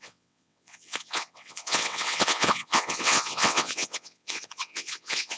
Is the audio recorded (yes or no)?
no